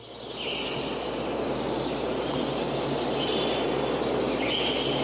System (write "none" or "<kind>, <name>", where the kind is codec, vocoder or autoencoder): none